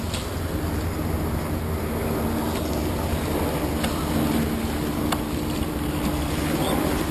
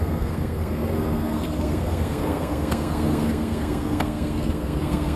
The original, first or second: first